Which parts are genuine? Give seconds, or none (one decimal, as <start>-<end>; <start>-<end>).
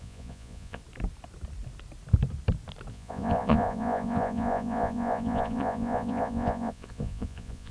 0.8-2.9